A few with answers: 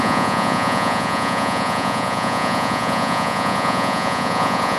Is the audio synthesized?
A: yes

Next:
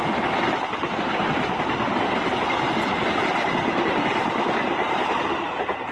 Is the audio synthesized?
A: no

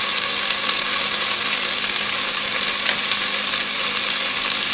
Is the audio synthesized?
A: no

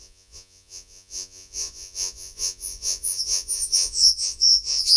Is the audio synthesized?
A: yes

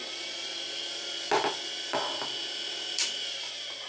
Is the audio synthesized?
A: no